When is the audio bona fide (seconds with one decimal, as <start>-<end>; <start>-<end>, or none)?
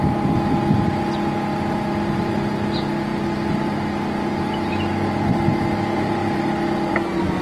0.0-6.2; 6.9-7.4